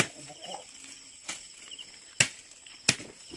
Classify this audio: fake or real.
real